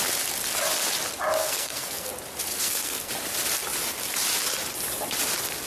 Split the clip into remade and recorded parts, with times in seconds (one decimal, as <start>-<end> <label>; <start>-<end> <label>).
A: 0.0-1.4 recorded; 1.4-2.1 remade; 2.1-2.5 recorded; 2.5-3.1 remade; 3.1-5.7 recorded